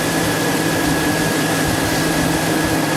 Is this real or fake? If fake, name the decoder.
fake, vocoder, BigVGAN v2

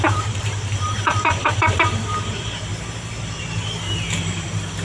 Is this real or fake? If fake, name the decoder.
fake, vocoder, BigVGAN v2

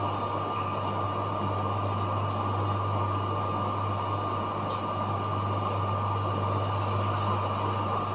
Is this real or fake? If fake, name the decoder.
real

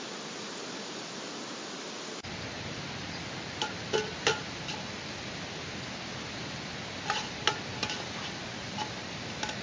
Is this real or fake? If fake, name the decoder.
real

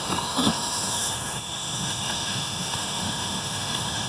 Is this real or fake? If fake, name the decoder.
fake, autoencoder, DAC-VAE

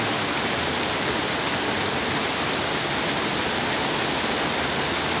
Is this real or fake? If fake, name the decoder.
real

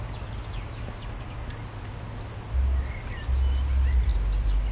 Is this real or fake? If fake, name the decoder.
real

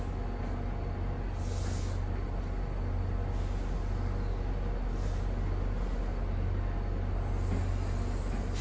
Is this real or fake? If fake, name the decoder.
real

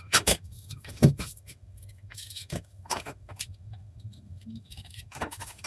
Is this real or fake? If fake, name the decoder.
fake, autoencoder, DAC-VAE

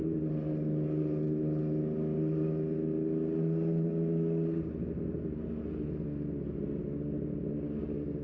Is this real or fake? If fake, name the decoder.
real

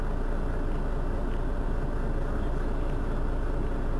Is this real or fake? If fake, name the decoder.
real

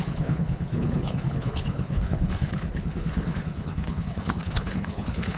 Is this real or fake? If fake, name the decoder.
fake, codec, HILCodec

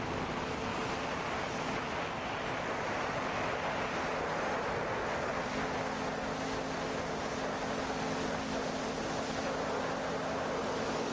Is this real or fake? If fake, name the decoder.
real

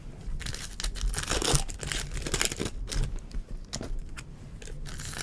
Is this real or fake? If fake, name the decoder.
real